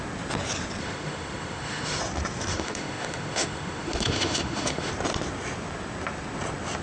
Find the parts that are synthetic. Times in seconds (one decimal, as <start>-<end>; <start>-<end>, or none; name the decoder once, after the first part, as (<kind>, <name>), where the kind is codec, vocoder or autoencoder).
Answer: 0.8-2.0 (autoencoder, DAC-VAE); 2.5-4.9